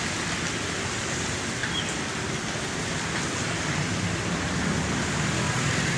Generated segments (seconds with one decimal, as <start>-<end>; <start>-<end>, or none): none